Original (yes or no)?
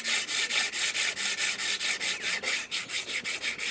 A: yes